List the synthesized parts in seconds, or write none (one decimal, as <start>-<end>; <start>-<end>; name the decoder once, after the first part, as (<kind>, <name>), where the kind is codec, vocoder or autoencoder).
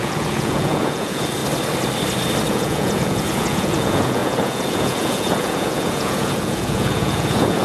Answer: 0.0-1.4 (vocoder, Vocos); 2.5-7.6